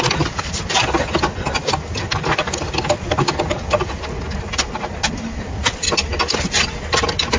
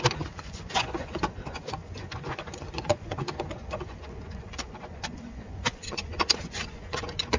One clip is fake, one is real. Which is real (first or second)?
first